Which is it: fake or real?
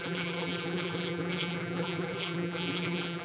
fake